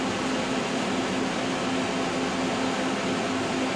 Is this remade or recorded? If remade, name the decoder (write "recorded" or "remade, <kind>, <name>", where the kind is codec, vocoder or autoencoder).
recorded